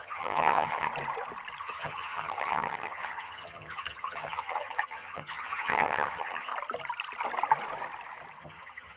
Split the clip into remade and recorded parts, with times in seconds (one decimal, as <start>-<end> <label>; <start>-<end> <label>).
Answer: 0.0-0.9 remade; 0.9-1.6 recorded; 1.6-6.5 remade; 6.5-8.4 recorded; 8.4-9.0 remade